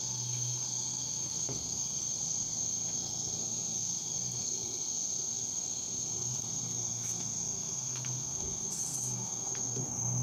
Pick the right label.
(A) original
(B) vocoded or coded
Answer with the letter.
B